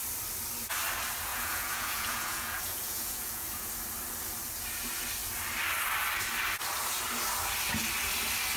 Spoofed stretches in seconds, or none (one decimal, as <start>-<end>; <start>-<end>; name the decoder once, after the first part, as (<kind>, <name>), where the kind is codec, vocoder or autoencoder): 1.3-3.7 (vocoder, Vocos)